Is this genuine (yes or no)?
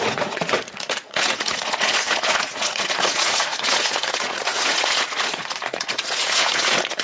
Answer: no